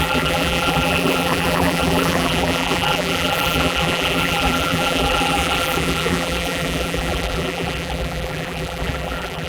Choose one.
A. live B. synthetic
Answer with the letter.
B